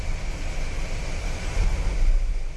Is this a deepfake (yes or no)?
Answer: no